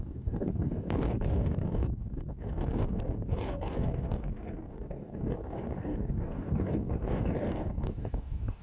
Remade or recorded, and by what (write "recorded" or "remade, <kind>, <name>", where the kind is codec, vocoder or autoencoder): remade, codec, DAC